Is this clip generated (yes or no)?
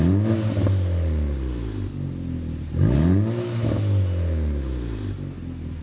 no